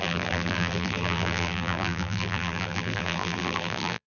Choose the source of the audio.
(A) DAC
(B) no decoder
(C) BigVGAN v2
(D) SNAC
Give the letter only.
C